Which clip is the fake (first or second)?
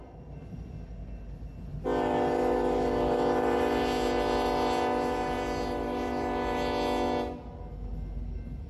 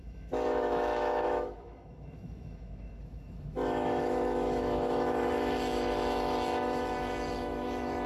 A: second